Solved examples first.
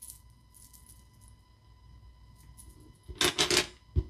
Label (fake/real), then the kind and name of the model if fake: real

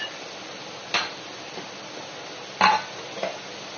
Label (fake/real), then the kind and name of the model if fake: real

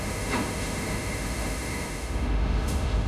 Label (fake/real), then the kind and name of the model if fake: fake, autoencoder, DAC-VAE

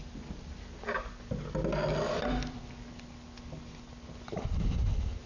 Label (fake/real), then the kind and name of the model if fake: real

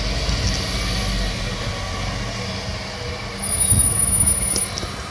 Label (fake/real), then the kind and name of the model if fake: real